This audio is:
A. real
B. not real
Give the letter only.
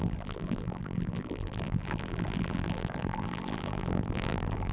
B